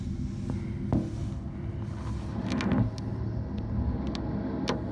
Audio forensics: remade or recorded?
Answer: recorded